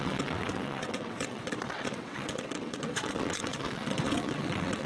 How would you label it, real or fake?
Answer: fake